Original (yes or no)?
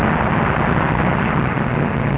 yes